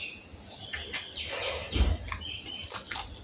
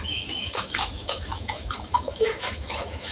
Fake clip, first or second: second